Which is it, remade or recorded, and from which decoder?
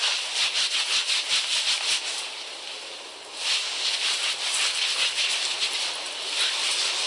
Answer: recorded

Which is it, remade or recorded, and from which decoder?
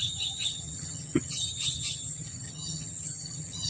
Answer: remade, vocoder, HiFi-GAN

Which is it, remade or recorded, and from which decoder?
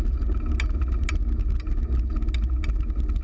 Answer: recorded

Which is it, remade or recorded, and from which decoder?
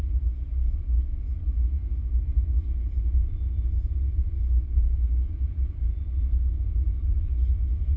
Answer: recorded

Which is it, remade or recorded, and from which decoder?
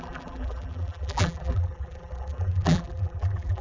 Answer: remade, vocoder, BigVGAN v2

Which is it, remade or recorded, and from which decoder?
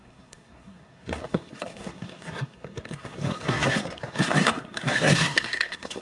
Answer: remade, codec, SNAC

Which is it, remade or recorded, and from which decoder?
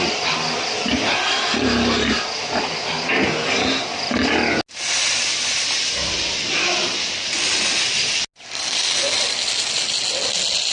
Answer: recorded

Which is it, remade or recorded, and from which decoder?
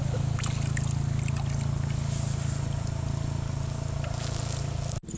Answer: recorded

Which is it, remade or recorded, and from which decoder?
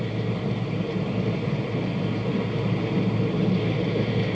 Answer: recorded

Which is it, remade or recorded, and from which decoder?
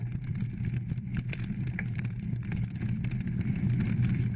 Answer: recorded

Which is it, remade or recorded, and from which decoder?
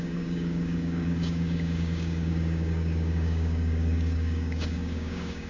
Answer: remade, codec, DAC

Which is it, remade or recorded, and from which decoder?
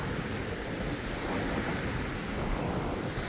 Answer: recorded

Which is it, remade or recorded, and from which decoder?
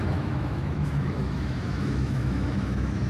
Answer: remade, autoencoder, DAC-VAE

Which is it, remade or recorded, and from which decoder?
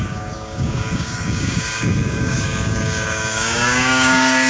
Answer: remade, codec, DAC